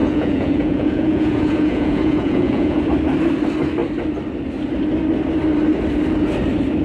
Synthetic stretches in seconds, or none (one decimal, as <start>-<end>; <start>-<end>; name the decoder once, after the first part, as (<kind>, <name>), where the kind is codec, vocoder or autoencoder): 0.0-2.8 (vocoder, Vocos)